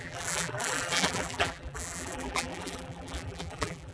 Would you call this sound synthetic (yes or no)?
yes